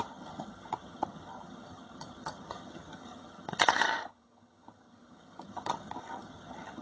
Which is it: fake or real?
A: fake